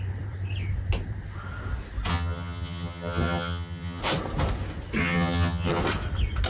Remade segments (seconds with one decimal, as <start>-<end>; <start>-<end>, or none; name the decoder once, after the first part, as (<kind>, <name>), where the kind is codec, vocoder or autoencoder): 2.1-4.0 (vocoder, HiFi-GAN); 5.0-5.8